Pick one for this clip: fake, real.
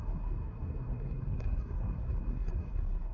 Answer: fake